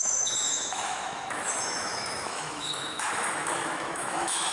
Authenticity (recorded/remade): remade